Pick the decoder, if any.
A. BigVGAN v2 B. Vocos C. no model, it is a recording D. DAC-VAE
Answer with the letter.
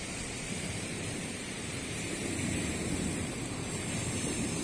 A